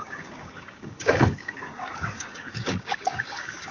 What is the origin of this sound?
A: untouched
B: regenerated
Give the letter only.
B